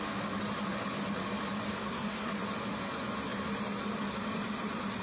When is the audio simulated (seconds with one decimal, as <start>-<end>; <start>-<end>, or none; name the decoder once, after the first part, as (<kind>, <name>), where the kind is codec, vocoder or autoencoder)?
1.8-2.3 (codec, SNAC)